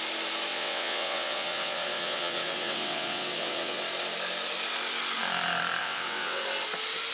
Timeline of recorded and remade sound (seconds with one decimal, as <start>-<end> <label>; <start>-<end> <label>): 0.0-0.5 recorded; 0.5-3.8 remade; 3.8-5.8 recorded; 5.8-6.4 remade; 6.4-7.1 recorded